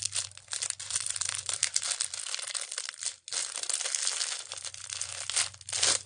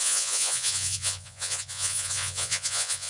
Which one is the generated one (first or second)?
second